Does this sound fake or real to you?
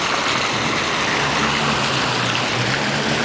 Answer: real